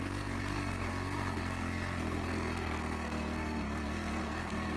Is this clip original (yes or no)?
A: no